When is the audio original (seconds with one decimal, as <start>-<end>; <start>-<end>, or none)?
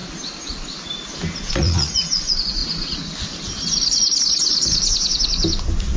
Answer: 0.0-1.5; 2.6-6.0